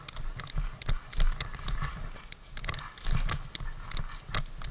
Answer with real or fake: real